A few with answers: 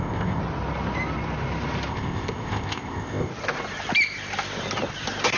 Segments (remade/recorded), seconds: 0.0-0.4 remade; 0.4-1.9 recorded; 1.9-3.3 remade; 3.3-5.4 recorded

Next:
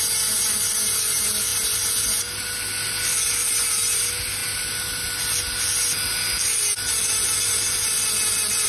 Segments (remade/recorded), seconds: 0.0-8.7 recorded

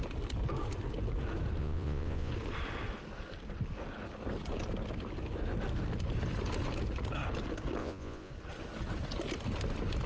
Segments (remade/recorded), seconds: 0.0-1.6 recorded; 1.6-2.3 remade; 2.3-7.8 recorded; 7.8-8.3 remade; 8.3-10.1 recorded

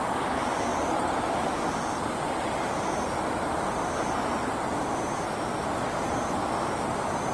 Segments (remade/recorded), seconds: 0.0-7.3 recorded

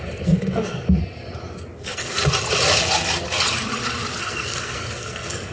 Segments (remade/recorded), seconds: 0.0-1.0 remade; 1.0-1.8 recorded; 1.8-2.2 remade; 2.2-4.2 recorded; 4.2-5.5 remade

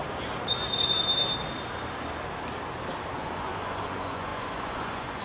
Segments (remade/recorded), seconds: 0.0-3.1 recorded; 3.1-5.2 remade